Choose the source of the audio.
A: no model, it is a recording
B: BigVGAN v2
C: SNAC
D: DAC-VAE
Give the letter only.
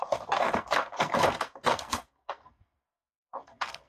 C